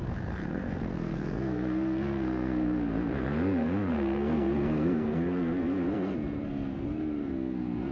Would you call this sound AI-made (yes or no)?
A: yes